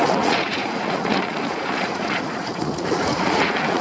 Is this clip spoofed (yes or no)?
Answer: yes